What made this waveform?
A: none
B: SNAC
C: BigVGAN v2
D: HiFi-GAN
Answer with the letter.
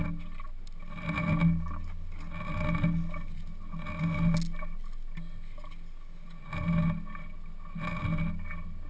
A